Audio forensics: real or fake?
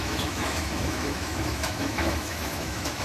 fake